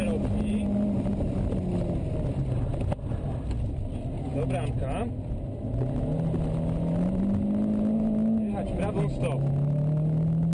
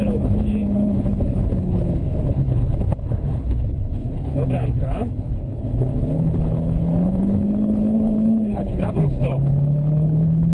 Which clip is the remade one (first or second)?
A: second